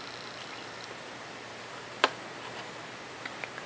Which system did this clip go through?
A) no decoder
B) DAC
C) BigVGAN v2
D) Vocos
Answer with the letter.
C